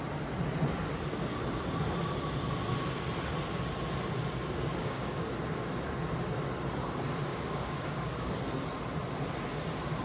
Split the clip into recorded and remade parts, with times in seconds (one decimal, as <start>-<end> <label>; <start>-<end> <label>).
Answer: 0.0-4.8 recorded; 4.8-5.3 remade; 5.3-7.3 recorded; 7.3-8.4 remade; 8.4-10.0 recorded